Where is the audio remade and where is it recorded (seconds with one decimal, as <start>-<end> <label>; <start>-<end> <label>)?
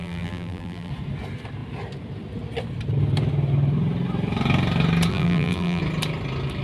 0.0-0.9 remade; 0.9-5.1 recorded; 5.1-5.8 remade; 5.8-6.6 recorded